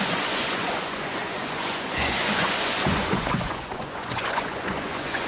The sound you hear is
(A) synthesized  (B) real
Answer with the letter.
A